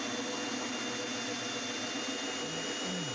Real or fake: real